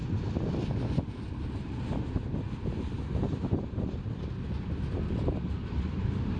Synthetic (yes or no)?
no